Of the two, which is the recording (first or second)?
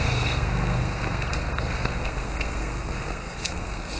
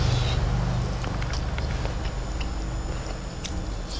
second